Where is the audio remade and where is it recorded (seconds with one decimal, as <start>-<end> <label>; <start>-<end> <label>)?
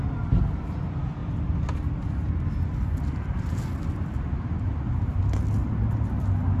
0.0-6.6 recorded